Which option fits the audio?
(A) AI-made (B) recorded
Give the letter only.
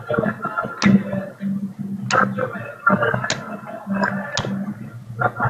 B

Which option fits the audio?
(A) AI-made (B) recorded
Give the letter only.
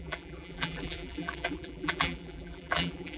A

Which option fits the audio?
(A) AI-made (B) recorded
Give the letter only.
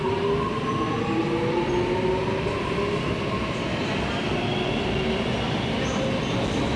B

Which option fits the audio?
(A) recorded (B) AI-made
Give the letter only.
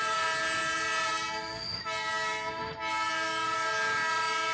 A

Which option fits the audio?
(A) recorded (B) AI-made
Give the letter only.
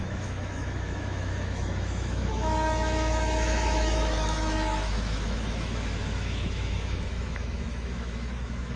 B